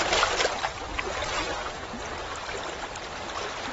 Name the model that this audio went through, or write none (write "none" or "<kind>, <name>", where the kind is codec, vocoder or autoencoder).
none